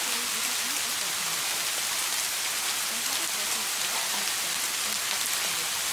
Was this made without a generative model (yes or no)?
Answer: yes